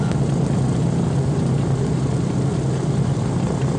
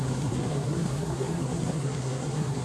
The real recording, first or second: first